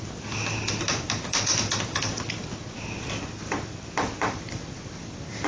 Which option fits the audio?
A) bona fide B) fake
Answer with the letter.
A